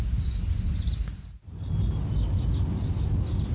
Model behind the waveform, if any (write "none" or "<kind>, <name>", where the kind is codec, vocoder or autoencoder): none